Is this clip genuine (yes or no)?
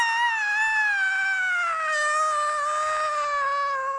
yes